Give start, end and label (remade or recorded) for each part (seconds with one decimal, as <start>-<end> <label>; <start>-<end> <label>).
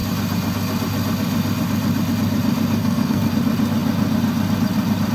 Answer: 0.0-2.8 recorded; 2.8-3.3 remade; 3.3-5.1 recorded